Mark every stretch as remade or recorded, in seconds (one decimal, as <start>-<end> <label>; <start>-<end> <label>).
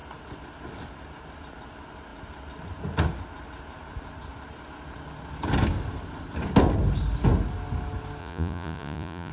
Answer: 0.0-8.2 recorded; 8.2-9.3 remade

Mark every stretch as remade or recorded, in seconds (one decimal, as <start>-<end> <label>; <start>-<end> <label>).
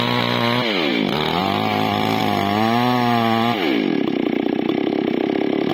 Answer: 0.0-5.7 recorded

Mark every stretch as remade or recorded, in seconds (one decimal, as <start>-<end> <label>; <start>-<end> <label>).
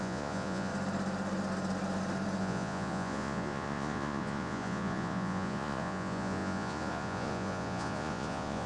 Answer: 0.0-0.7 remade; 0.7-2.4 recorded; 2.4-8.7 remade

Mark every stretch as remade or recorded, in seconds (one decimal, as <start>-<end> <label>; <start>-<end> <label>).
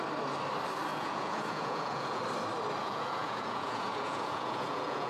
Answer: 0.0-0.9 recorded; 0.9-2.2 remade; 2.2-2.8 recorded; 2.8-5.1 remade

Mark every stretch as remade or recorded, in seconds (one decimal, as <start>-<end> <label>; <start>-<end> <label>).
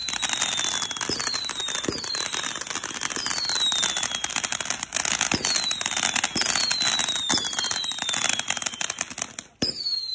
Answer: 0.0-10.1 recorded